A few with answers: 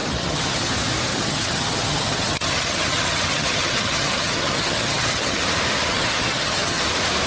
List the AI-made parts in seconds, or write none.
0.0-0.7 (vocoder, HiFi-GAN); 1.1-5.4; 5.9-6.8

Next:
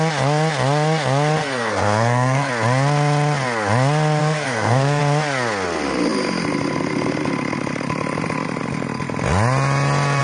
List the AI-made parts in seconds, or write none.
1.4-2.5 (codec, SNAC); 4.2-5.0

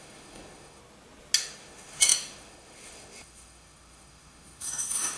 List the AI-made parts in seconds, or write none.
0.0-0.8 (autoencoder, DAC-VAE); 1.4-5.2

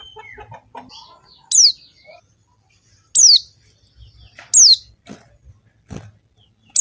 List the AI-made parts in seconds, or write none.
none

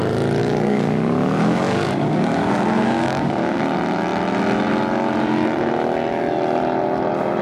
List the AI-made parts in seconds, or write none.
0.4-3.6 (codec, DAC)